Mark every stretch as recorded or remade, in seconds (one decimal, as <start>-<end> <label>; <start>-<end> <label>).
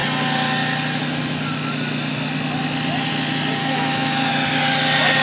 0.0-3.6 recorded; 3.6-4.3 remade; 4.3-5.2 recorded